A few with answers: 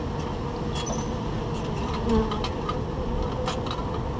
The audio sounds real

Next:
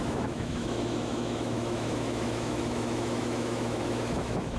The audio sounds fake